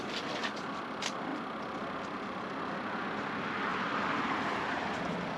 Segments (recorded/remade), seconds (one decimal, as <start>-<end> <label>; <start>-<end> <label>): 0.0-5.4 recorded